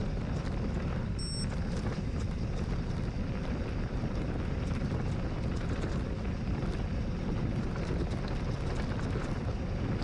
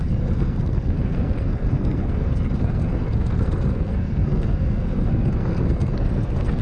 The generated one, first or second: second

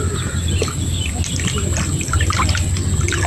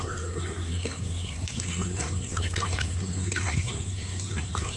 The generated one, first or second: second